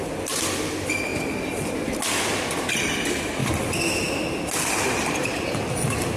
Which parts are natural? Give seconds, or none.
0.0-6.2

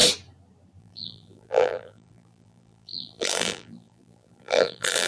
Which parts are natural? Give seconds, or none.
0.0-0.8

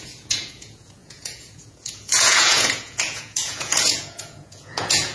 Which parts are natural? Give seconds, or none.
none

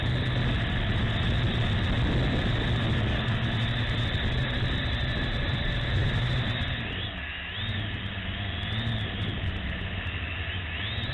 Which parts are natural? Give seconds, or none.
0.0-5.3; 6.8-11.1